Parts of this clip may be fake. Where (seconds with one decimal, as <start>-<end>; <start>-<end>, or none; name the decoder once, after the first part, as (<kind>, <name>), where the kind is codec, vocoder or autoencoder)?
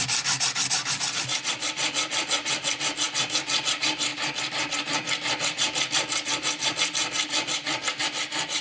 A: none